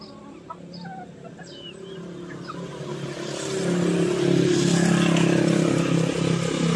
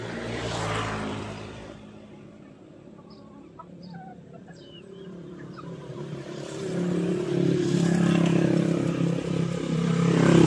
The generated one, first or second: second